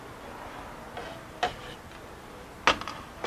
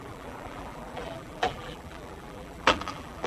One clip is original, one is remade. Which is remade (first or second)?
second